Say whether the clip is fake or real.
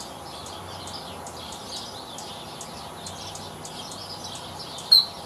real